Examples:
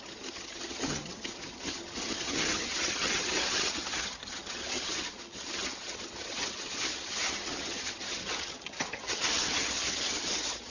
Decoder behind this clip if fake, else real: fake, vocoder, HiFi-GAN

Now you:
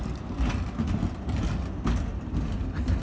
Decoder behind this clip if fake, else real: real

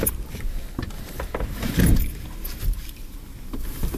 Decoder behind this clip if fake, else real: fake, vocoder, BigVGAN v2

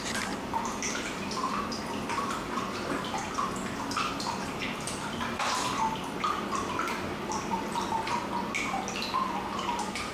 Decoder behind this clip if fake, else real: real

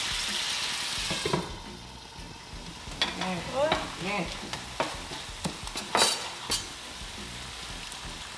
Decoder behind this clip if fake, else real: real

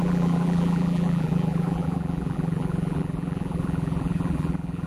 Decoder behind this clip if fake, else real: fake, vocoder, BigVGAN v2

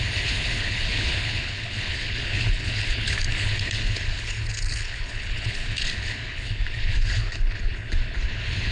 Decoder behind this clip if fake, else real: fake, codec, HILCodec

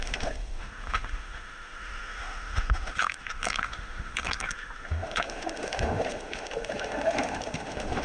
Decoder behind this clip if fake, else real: fake, autoencoder, DAC-VAE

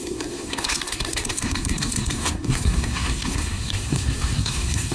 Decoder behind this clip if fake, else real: fake, codec, SNAC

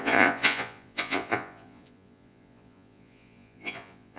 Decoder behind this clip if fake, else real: fake, vocoder, Vocos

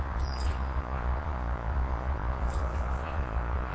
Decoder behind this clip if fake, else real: fake, vocoder, Vocos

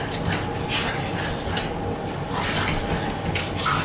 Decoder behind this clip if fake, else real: real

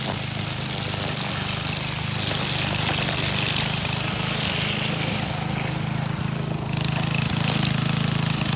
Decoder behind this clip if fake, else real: real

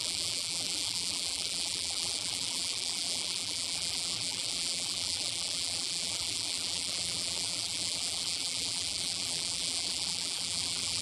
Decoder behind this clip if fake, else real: fake, vocoder, BigVGAN v2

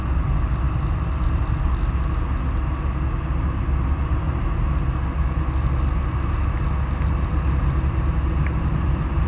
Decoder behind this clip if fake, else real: real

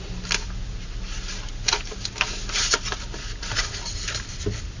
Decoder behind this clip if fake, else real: real